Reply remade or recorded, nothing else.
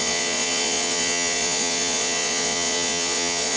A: remade